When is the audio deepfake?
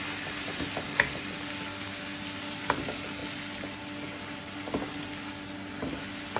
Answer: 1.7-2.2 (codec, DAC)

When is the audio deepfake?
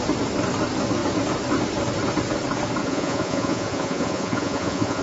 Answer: 2.8-5.0 (vocoder, Vocos)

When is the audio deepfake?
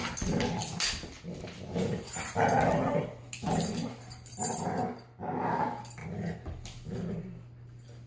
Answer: none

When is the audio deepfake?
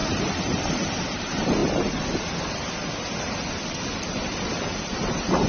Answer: 0.0-5.5 (vocoder, BigVGAN v2)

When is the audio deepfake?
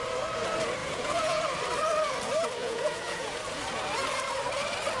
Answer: 0.8-1.4 (vocoder, Vocos); 2.6-3.4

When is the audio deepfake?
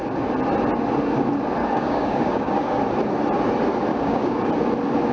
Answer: 1.6-2.8 (codec, DAC); 3.9-4.5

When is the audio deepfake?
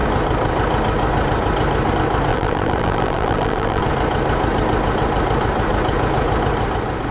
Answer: 2.3-3.8 (vocoder, BigVGAN v2)